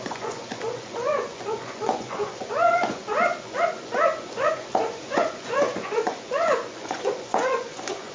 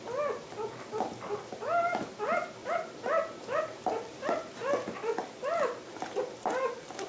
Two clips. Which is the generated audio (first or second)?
first